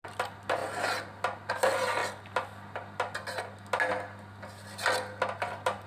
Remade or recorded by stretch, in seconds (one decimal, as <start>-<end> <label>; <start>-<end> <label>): 0.0-5.9 recorded